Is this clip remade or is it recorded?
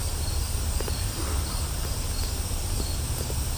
recorded